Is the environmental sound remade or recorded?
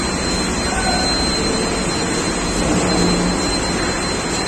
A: recorded